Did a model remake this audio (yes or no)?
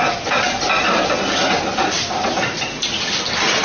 no